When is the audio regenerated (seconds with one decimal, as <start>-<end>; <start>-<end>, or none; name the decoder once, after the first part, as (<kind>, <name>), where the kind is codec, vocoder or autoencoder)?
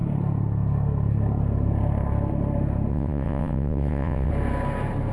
2.9-4.3 (vocoder, WaveNeXt)